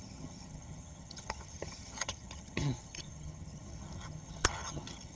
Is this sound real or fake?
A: fake